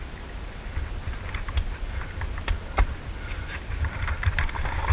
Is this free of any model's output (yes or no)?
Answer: yes